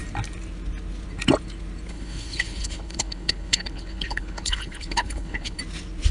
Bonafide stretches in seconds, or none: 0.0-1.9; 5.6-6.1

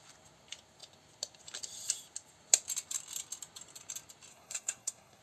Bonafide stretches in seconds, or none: 0.0-4.3